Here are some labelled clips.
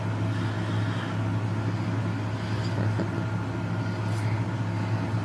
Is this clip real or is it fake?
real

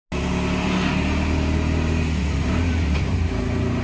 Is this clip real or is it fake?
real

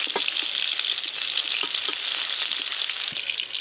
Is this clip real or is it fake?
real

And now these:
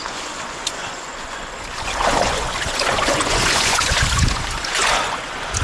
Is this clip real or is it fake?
fake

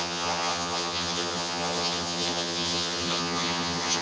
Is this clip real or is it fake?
fake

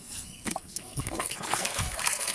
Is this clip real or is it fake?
fake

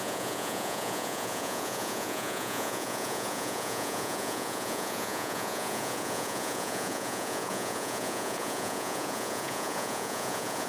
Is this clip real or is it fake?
fake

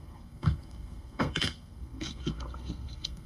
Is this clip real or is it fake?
fake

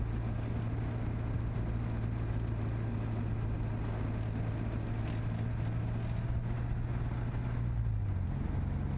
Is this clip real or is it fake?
real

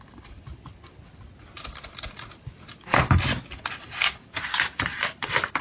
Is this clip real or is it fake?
real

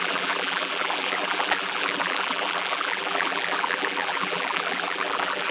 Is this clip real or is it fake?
fake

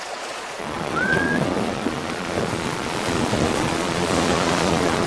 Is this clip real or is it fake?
fake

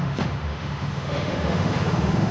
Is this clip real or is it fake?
fake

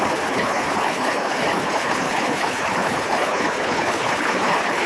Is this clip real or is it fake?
fake